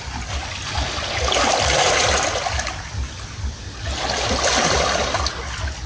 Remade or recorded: recorded